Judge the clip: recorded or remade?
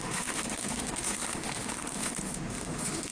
remade